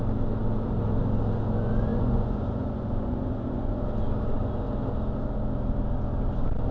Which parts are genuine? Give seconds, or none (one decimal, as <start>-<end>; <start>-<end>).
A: 0.0-1.9; 3.8-6.7